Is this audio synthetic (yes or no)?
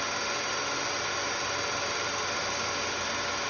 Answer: no